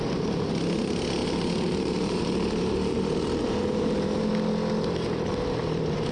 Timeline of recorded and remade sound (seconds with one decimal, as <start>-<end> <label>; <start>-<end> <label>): 0.0-1.2 recorded; 1.2-4.2 remade; 4.2-6.1 recorded